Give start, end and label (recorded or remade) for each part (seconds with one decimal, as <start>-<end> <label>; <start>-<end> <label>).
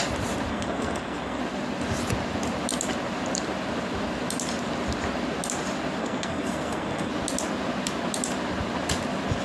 0.0-0.5 recorded; 0.5-1.4 remade; 1.4-6.0 recorded; 6.0-7.1 remade; 7.1-9.4 recorded